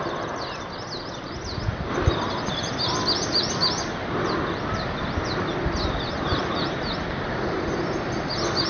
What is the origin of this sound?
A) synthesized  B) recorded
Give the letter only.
B